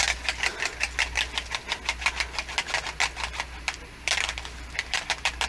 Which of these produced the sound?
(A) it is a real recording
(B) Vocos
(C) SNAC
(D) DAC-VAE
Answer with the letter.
A